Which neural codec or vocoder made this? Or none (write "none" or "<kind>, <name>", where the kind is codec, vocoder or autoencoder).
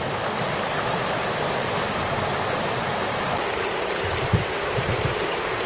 none